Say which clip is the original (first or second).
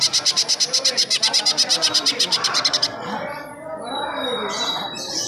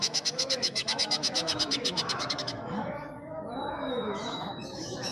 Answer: first